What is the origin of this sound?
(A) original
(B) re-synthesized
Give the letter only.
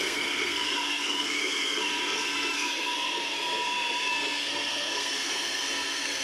B